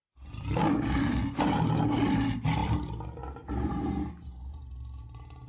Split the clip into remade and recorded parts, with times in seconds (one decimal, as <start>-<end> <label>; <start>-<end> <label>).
0.0-5.5 recorded